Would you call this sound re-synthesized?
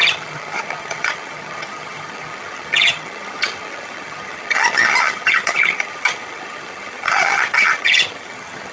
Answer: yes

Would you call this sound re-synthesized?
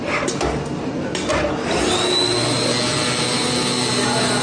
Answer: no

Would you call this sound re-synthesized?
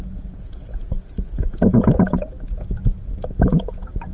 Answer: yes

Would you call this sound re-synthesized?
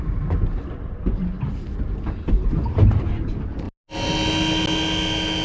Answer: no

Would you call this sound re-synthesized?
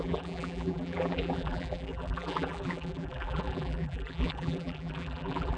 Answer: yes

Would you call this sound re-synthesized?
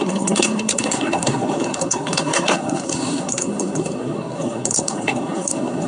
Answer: yes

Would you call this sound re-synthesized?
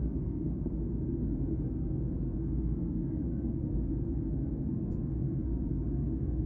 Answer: yes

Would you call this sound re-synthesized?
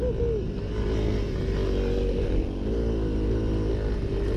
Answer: no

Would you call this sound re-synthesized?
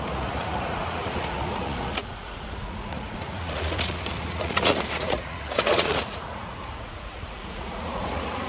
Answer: yes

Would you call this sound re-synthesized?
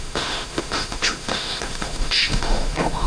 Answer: yes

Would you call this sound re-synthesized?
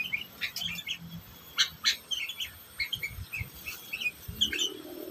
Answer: no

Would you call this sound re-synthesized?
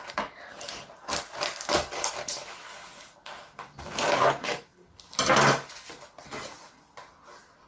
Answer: no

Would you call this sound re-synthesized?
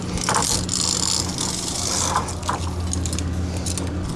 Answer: no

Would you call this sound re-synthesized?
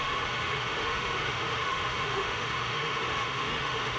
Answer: yes